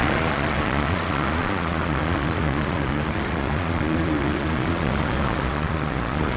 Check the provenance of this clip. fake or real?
fake